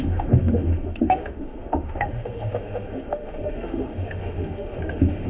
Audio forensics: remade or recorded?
remade